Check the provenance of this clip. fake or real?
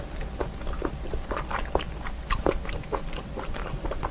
real